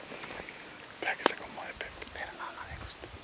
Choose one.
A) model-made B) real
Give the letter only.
B